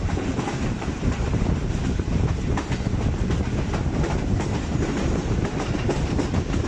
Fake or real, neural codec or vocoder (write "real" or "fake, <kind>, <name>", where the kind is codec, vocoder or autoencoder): fake, vocoder, BigVGAN v2